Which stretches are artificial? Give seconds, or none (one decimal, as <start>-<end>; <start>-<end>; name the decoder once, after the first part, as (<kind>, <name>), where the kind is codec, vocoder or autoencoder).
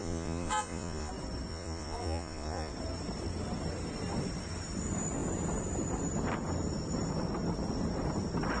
0.0-1.1 (vocoder, Vocos); 1.5-2.7